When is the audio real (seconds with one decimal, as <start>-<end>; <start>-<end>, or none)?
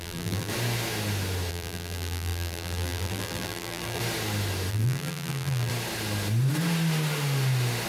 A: 0.5-1.5; 4.0-4.7; 5.7-7.9